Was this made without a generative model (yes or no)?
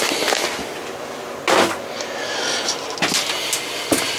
yes